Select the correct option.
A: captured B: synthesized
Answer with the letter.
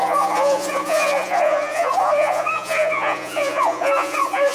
B